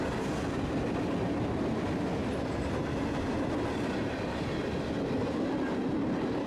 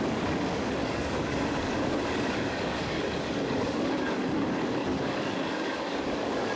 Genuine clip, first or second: first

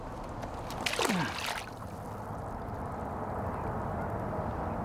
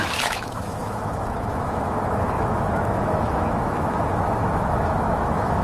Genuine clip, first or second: first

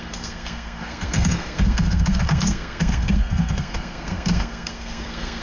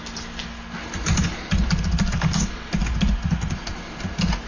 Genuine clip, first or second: second